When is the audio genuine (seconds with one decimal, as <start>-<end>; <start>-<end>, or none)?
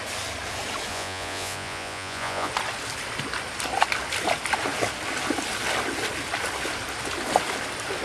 0.0-0.9; 2.5-8.0